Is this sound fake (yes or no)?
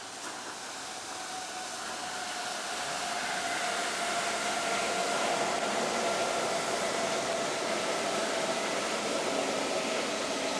no